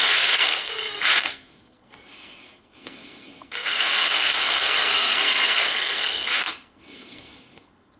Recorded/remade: remade